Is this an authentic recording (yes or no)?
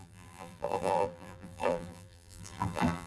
no